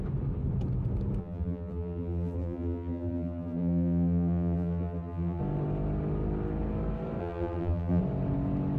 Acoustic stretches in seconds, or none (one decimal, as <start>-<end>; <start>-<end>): 0.0-1.2; 5.4-7.2; 8.0-8.8